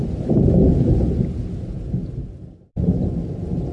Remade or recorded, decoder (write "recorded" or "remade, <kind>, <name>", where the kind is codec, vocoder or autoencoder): recorded